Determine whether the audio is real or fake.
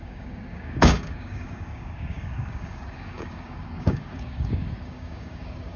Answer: fake